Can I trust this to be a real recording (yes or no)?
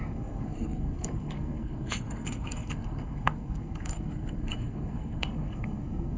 no